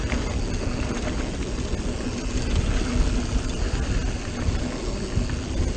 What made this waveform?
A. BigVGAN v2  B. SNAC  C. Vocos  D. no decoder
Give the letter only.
D